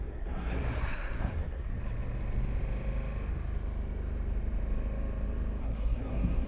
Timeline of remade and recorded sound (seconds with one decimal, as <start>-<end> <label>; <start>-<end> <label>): 0.0-1.7 remade; 1.7-5.6 recorded; 5.6-6.5 remade